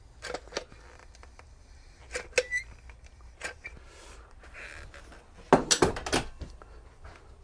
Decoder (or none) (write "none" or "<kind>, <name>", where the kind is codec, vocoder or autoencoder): none